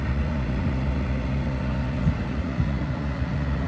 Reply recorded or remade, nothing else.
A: remade